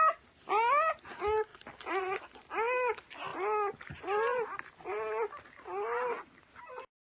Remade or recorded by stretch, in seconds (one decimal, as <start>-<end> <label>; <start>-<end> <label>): 0.0-7.2 recorded